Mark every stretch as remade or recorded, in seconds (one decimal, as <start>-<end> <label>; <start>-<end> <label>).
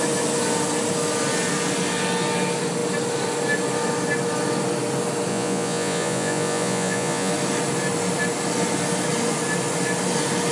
0.0-5.3 recorded; 5.3-7.3 remade; 7.3-10.5 recorded